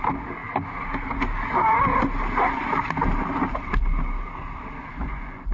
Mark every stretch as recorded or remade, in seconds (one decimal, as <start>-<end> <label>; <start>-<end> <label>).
0.0-4.8 recorded; 4.8-5.5 remade